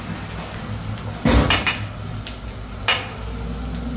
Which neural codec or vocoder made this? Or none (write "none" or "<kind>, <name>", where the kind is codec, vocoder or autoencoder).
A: none